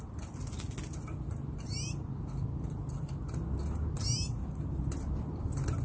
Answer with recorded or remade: recorded